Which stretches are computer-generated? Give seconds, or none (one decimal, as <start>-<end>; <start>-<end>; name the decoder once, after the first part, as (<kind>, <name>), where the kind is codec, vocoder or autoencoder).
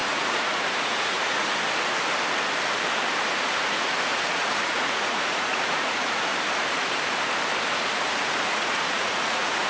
0.0-1.5 (vocoder, Vocos); 3.5-6.3; 8.1-9.7